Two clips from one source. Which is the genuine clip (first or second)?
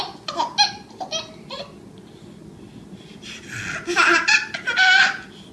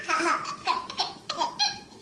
first